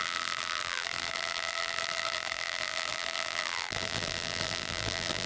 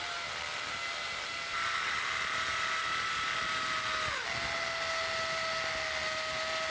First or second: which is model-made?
first